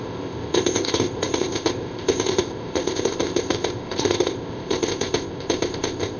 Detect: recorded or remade remade